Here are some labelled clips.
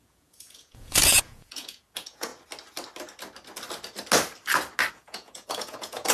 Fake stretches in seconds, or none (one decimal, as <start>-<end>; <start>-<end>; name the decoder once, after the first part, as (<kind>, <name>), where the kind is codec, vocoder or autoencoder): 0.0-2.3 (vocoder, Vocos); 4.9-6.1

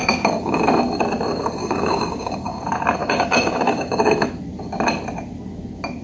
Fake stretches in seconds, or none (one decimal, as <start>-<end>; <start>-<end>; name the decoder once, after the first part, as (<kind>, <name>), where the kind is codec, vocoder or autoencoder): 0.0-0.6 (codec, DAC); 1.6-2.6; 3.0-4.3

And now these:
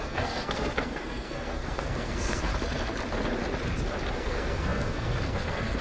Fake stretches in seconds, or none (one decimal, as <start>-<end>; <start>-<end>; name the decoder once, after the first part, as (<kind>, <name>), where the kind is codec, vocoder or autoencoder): 0.0-2.5 (codec, SNAC); 4.1-5.8

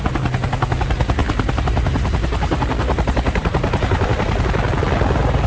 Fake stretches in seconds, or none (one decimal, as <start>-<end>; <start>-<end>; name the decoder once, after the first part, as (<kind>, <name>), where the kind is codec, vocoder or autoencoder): 1.2-4.4 (vocoder, BigVGAN v2)